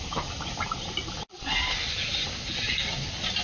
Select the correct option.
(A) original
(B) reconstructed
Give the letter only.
A